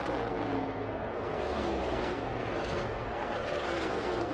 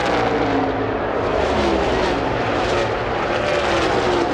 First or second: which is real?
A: second